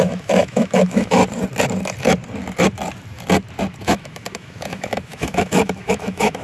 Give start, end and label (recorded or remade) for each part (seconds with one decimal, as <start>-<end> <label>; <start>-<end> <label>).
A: 0.0-1.2 remade; 1.2-3.8 recorded; 3.8-6.4 remade